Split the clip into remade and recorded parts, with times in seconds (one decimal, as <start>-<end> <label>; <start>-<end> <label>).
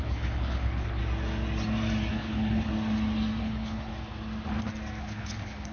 0.0-1.0 remade; 1.0-2.1 recorded; 2.1-2.7 remade; 2.7-3.4 recorded; 3.4-3.9 remade; 3.9-5.0 recorded; 5.0-5.7 remade